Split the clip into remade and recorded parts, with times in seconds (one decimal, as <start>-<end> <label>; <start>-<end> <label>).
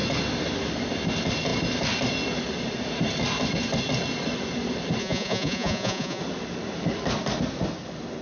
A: 0.0-5.0 recorded; 5.0-6.2 remade; 6.2-8.2 recorded